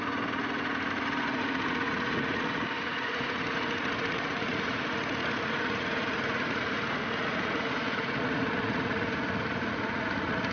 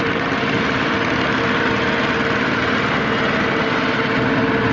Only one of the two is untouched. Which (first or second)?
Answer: second